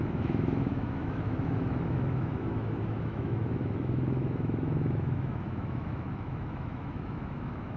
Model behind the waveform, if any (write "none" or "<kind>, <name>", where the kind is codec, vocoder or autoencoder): autoencoder, DAC-VAE